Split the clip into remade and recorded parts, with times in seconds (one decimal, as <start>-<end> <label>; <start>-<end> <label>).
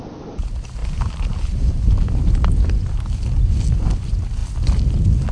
0.0-0.8 recorded; 0.8-1.9 remade; 1.9-5.3 recorded